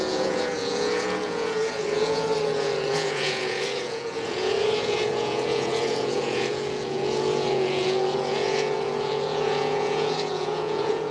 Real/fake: fake